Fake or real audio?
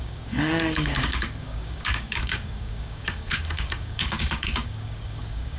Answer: fake